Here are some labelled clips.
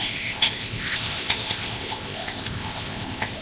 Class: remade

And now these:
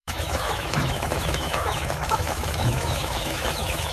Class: remade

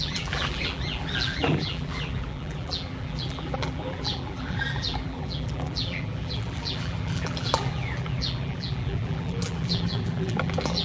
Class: remade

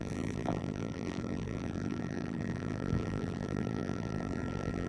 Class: remade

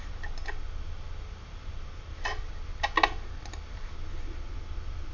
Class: recorded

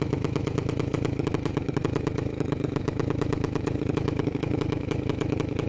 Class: remade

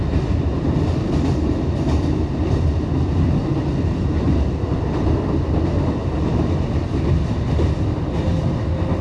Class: recorded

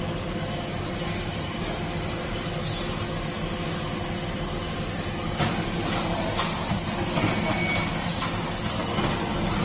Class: recorded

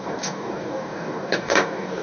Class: remade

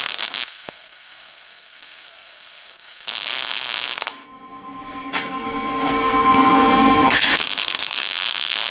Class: remade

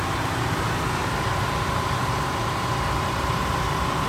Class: remade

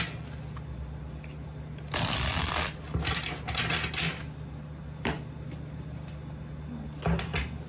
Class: recorded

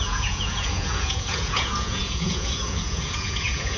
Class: remade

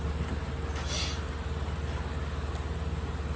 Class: recorded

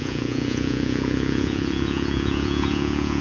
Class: remade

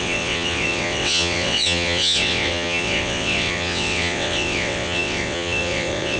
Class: remade